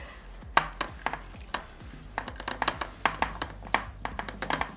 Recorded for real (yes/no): yes